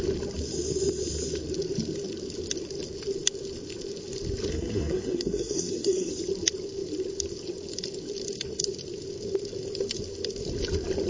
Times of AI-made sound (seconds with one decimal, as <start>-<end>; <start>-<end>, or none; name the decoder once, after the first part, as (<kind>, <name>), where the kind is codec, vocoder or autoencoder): 4.5-6.1 (codec, SNAC)